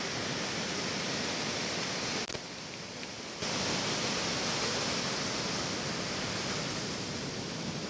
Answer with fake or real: real